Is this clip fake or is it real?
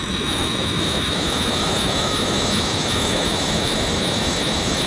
fake